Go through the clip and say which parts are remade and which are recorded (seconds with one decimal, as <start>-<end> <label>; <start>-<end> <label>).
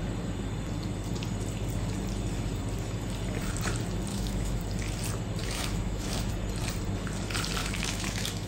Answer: 0.0-4.1 recorded; 4.1-4.6 remade; 4.6-5.4 recorded; 5.4-6.3 remade; 6.3-7.6 recorded; 7.6-8.5 remade